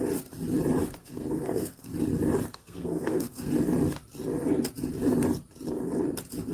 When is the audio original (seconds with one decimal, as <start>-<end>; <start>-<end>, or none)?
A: 0.0-1.0; 1.9-2.5; 3.5-6.5